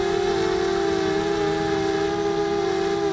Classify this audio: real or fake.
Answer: real